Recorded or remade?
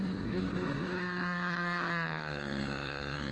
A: remade